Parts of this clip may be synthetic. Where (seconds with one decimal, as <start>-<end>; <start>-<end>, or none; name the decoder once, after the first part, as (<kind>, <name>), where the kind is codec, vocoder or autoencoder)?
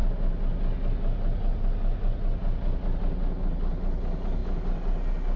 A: none